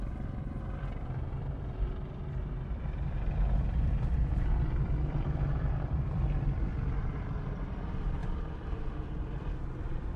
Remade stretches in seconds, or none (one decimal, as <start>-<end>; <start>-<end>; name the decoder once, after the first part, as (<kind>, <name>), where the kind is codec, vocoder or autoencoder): 0.0-10.2 (vocoder, BigVGAN v2)